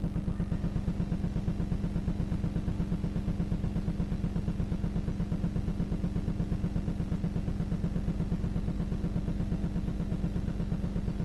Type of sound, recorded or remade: recorded